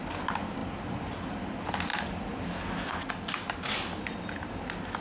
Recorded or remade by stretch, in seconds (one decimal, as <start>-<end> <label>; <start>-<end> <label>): 0.0-5.0 recorded